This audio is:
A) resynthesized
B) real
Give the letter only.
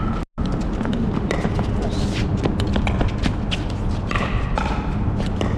B